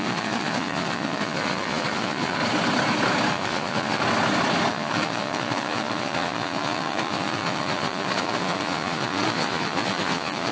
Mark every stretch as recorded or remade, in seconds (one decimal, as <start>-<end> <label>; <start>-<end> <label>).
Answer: 0.0-2.4 remade; 2.4-3.3 recorded; 3.3-4.0 remade; 4.0-4.7 recorded; 4.7-10.5 remade